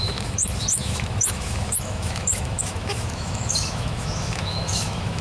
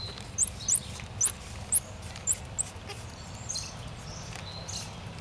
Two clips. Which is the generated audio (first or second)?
first